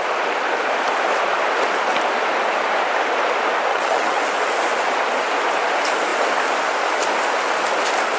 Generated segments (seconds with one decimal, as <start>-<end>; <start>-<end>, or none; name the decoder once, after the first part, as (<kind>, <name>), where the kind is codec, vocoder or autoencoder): 3.7-4.2 (vocoder, HiFi-GAN)